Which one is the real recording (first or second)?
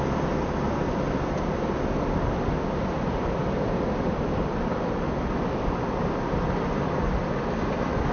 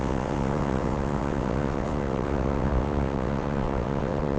first